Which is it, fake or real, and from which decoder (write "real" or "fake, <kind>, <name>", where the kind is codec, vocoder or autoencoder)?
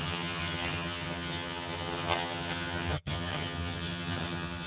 fake, vocoder, HiFi-GAN